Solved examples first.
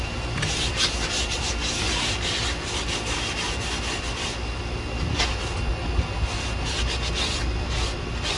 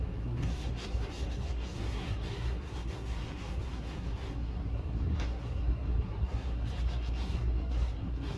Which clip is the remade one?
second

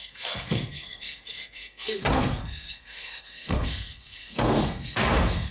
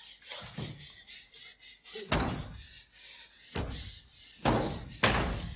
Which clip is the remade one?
first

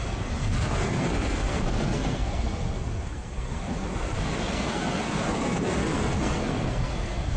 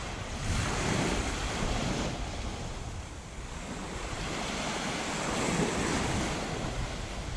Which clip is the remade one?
first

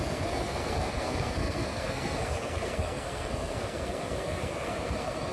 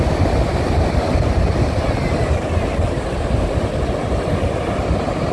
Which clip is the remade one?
first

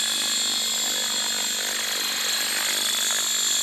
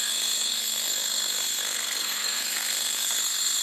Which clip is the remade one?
second